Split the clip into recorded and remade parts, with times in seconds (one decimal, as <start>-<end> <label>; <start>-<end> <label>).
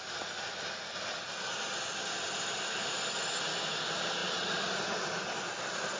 0.0-6.0 recorded